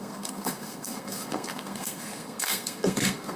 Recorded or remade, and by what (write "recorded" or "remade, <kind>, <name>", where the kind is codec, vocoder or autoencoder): remade, codec, SNAC